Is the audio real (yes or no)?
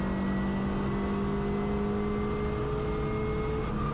yes